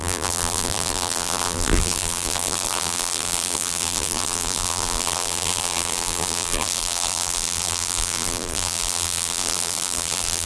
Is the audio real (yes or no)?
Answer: no